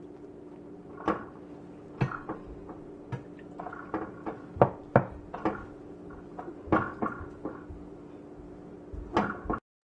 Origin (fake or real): real